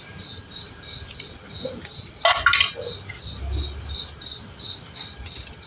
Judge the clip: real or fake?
real